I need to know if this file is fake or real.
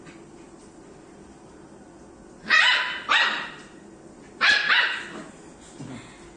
real